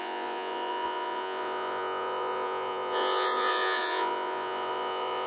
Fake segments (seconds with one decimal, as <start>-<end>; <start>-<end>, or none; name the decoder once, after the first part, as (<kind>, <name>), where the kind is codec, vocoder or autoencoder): 0.0-5.3 (vocoder, Vocos)